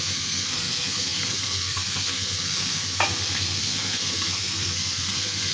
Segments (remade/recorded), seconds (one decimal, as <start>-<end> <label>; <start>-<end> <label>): 0.0-5.5 remade